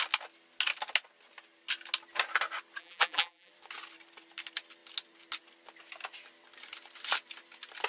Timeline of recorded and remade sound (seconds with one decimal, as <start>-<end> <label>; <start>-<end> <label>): 0.0-2.8 recorded; 2.8-3.5 remade; 3.5-7.9 recorded